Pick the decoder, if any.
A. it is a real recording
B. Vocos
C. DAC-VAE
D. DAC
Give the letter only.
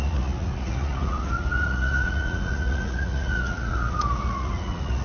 B